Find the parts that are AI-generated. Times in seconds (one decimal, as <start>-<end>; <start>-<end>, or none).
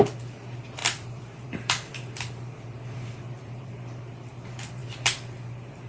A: 0.8-4.3